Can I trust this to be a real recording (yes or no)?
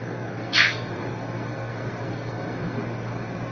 no